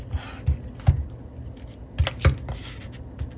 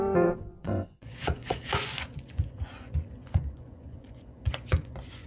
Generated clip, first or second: second